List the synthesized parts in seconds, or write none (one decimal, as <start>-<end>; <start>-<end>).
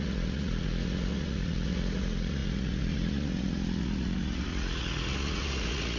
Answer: 0.0-6.0